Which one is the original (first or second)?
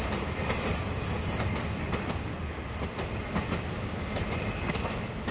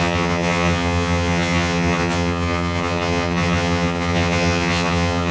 first